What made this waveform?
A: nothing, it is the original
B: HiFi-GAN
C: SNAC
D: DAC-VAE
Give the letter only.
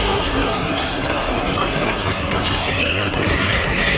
C